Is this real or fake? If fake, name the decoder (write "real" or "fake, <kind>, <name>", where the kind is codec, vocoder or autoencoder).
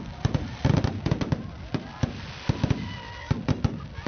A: real